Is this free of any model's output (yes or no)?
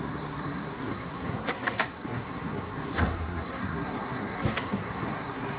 no